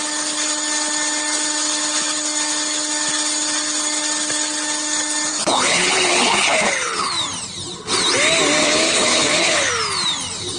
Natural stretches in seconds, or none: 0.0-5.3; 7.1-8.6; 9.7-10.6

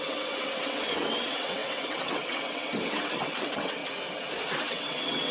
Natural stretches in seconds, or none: 3.8-4.5

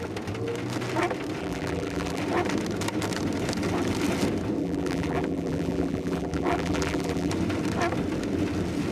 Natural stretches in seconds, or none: 0.0-1.4; 2.2-4.6; 7.3-8.9

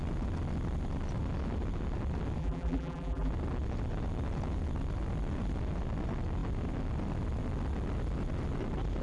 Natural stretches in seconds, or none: 0.0-2.4; 3.3-9.0

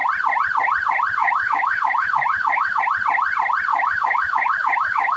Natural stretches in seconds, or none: 0.0-1.2; 2.8-3.7

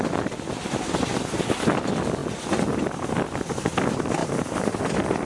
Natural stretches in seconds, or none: 0.0-4.2; 4.8-5.3

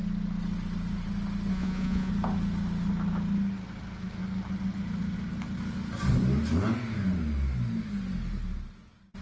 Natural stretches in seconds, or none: 0.0-1.5; 2.1-9.2